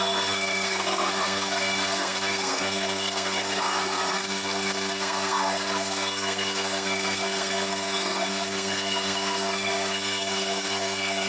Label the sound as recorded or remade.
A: remade